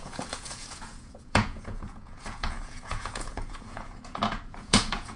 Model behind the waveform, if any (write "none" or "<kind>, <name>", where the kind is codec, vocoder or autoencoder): vocoder, Vocos